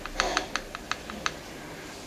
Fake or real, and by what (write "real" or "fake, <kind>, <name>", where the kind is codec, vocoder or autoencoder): real